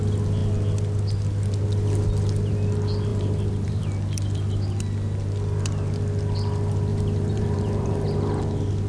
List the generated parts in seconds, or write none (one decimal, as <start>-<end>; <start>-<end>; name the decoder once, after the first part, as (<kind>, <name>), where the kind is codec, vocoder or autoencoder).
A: 3.1-3.8 (vocoder, BigVGAN v2); 6.9-8.1